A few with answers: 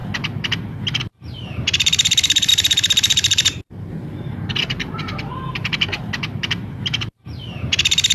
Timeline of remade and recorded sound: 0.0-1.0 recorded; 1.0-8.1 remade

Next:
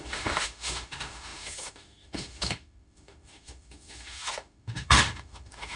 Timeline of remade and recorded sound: 0.0-5.8 remade

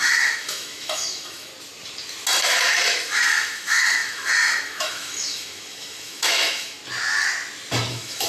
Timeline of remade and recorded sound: 0.0-1.5 remade; 1.5-2.4 recorded; 2.4-6.8 remade; 6.8-7.9 recorded; 7.9-8.3 remade